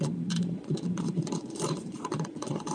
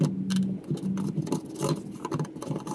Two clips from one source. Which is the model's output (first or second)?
first